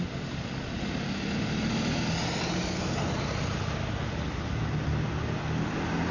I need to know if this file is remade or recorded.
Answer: recorded